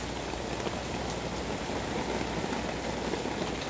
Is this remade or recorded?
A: recorded